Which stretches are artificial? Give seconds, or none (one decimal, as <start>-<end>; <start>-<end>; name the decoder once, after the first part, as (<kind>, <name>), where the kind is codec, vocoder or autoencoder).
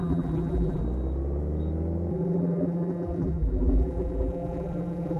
0.0-0.8 (vocoder, BigVGAN v2); 2.1-5.2